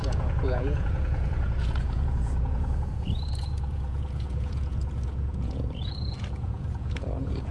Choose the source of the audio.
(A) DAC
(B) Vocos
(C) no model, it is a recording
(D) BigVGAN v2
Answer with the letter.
B